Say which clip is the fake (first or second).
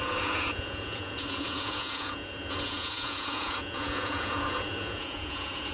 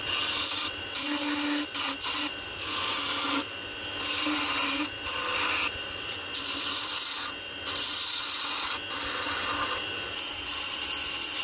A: first